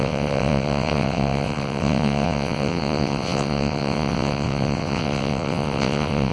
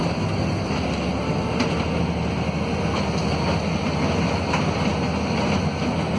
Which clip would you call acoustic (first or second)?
second